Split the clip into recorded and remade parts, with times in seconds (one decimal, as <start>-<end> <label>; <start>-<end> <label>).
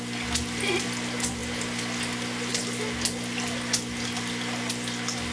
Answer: 0.0-5.3 recorded